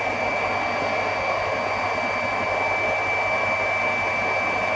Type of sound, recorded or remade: recorded